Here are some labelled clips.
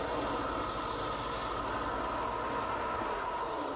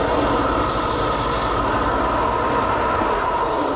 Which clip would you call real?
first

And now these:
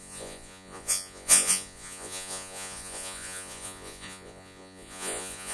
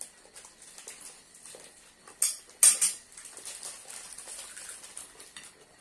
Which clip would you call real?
second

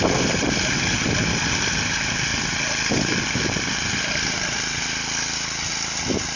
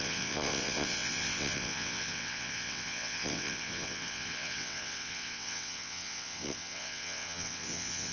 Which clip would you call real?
first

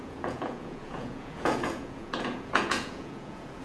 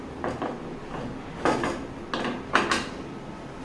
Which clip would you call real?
second